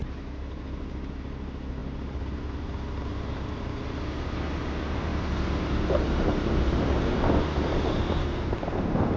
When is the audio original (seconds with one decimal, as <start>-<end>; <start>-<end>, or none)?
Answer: 0.0-9.2